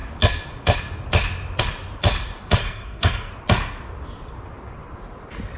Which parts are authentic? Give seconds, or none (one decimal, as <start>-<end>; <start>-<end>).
0.0-2.6; 3.3-5.6

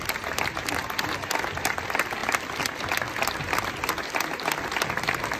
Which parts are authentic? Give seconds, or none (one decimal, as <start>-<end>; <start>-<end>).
0.0-5.4